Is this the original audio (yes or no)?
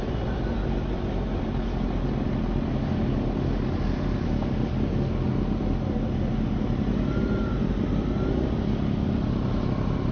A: yes